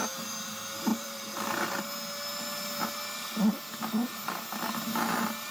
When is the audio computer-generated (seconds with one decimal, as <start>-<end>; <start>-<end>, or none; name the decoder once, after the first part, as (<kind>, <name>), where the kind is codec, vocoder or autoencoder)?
0.9-1.9 (vocoder, BigVGAN v2)